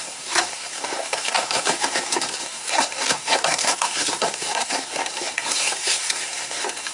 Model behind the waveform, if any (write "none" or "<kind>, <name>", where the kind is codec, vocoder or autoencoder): codec, SNAC